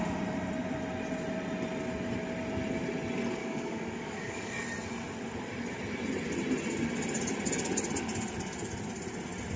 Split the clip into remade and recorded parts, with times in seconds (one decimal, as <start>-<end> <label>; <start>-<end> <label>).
0.0-3.4 recorded; 3.4-4.5 remade; 4.5-9.6 recorded

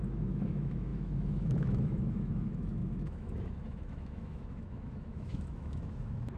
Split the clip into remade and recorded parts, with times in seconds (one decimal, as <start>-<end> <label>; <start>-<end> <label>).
0.0-6.4 remade

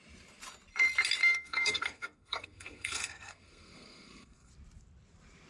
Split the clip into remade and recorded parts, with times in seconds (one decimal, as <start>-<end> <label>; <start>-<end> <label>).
0.0-1.2 recorded; 1.2-4.5 remade; 4.5-5.5 recorded